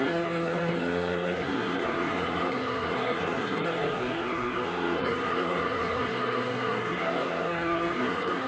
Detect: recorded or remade remade